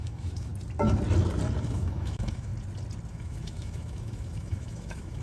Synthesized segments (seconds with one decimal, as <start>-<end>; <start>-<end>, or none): 0.0-0.5; 1.6-2.5; 3.1-5.2